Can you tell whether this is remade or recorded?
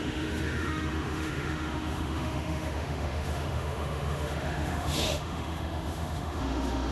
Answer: remade